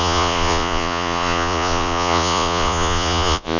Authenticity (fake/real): fake